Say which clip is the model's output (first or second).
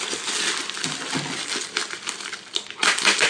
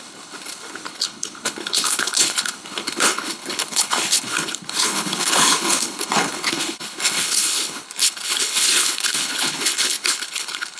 second